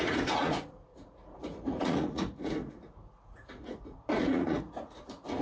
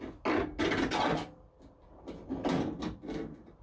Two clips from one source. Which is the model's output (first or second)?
first